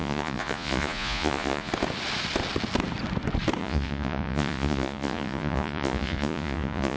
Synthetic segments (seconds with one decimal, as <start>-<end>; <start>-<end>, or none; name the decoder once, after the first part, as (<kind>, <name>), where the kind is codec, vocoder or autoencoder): 0.0-1.7 (vocoder, Vocos); 3.6-7.0